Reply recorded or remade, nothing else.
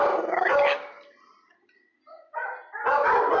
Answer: recorded